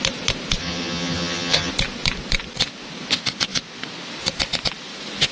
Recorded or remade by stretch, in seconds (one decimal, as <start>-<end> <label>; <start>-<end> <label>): 0.0-0.6 recorded; 0.6-1.7 remade; 1.7-5.3 recorded